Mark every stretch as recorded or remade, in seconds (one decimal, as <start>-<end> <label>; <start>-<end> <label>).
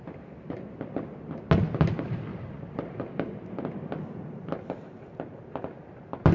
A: 0.0-2.3 recorded; 2.3-3.0 remade; 3.0-6.3 recorded